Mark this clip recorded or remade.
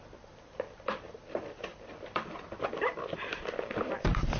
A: remade